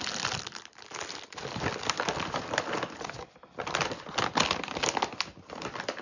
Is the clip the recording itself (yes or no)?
yes